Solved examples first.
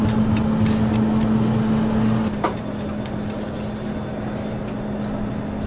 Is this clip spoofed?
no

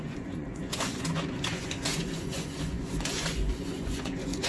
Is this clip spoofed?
yes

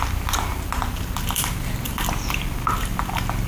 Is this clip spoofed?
no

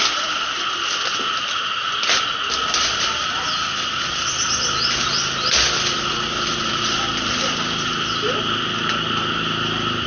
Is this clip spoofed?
no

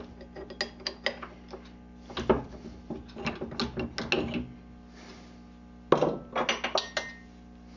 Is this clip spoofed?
no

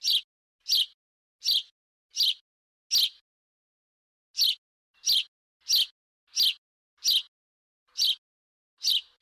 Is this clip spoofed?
no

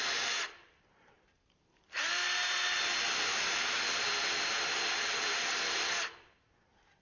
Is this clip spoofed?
no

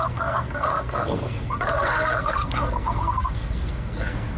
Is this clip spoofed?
yes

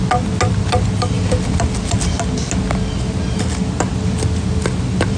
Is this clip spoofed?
no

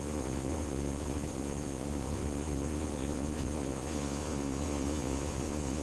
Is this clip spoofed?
yes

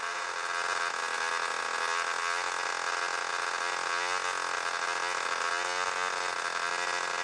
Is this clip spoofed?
no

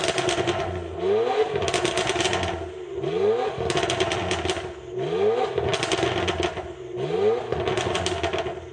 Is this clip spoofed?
no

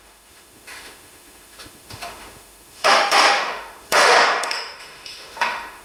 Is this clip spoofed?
yes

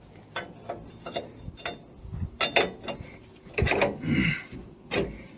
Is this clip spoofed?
no